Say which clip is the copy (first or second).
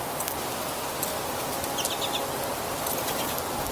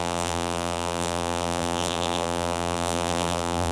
second